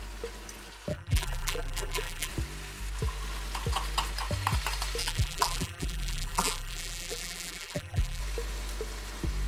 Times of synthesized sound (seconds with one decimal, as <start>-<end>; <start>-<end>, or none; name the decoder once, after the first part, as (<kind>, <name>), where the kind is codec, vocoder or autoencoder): 0.9-2.3 (vocoder, BigVGAN v2); 5.0-8.2